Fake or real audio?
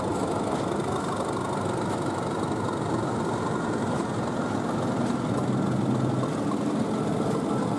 real